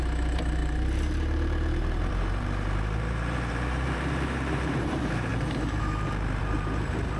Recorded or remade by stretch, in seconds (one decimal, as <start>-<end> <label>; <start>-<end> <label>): 0.0-7.2 remade